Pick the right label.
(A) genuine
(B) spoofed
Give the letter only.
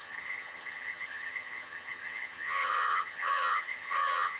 B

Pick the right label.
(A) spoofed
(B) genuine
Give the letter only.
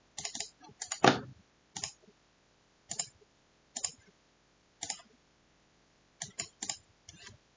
B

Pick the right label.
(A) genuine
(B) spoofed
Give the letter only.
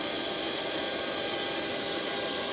A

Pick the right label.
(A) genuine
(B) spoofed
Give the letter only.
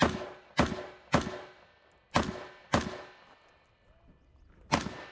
A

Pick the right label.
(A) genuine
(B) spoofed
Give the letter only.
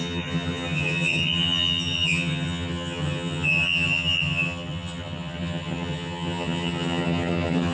B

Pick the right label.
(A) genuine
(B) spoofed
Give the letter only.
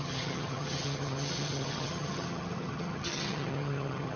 B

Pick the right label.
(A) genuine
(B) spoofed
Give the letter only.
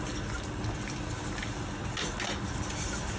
A